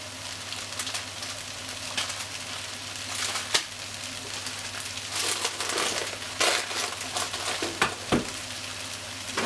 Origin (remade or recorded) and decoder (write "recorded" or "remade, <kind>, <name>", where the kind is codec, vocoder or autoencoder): recorded